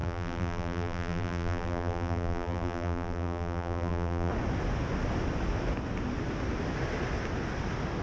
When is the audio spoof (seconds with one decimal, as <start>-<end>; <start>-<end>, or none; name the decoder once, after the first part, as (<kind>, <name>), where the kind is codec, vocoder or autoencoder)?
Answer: 0.0-4.3 (vocoder, BigVGAN v2)